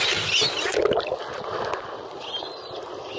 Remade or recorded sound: recorded